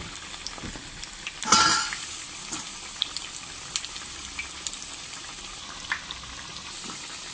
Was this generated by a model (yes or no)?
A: no